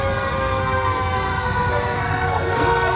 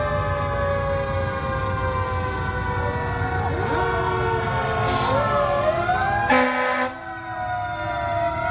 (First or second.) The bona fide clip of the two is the second